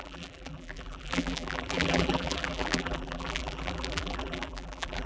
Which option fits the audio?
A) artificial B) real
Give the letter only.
A